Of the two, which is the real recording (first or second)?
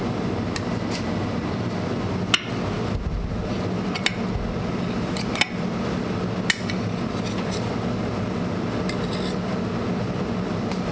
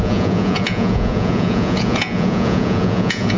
first